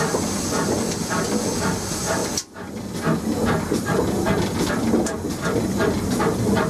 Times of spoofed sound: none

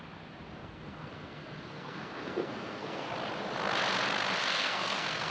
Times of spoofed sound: 0.6-3.1 (codec, SNAC); 4.4-5.3

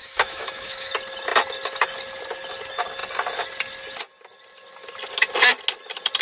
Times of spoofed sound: 0.0-0.9 (autoencoder, DAC-VAE)

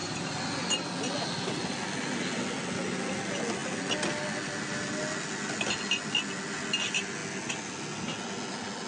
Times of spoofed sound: none

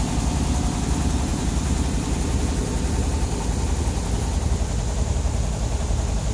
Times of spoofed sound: none

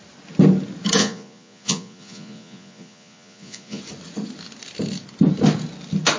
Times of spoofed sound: 1.0-3.8 (vocoder, Vocos)